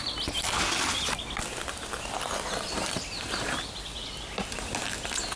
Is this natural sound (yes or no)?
yes